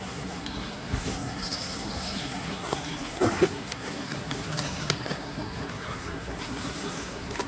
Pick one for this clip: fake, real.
fake